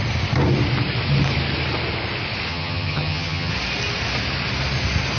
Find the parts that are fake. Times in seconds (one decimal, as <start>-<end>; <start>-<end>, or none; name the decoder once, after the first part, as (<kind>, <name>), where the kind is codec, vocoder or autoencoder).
2.5-3.5 (vocoder, HiFi-GAN)